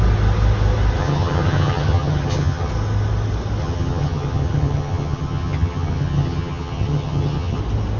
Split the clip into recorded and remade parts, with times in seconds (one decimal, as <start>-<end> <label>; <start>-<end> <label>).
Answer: 0.0-1.0 recorded; 1.0-2.7 remade; 2.7-3.6 recorded; 3.6-7.6 remade; 7.6-8.0 recorded